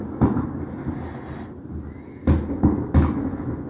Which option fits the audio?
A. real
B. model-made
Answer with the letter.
A